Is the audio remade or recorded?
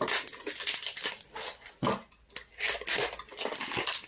recorded